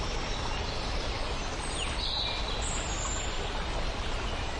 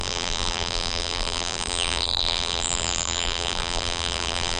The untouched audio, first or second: first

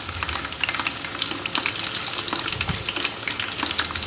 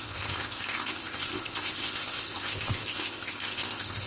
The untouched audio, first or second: first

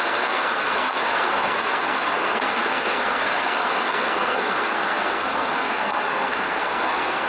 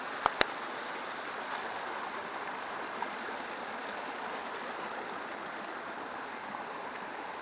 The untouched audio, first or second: second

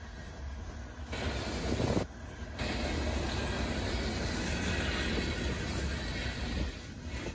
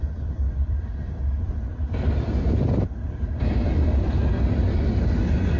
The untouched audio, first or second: first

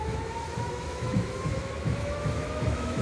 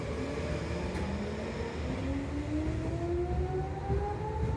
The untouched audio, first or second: second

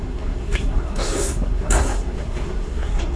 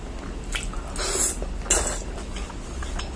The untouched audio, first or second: second